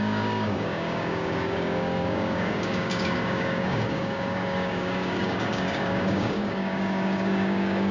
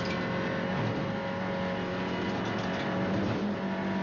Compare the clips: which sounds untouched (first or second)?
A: second